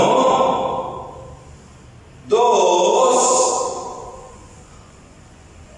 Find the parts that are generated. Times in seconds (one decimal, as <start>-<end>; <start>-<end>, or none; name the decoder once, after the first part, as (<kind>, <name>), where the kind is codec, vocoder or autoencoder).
3.5-5.8 (vocoder, Vocos)